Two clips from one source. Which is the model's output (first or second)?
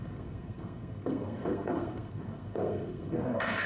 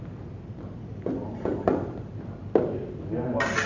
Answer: first